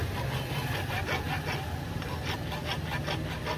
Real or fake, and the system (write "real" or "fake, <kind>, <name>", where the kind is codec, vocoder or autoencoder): real